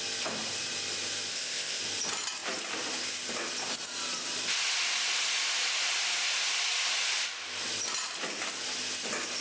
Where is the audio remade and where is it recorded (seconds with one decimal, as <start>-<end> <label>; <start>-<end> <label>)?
0.0-1.3 recorded; 1.3-1.8 remade; 1.8-9.4 recorded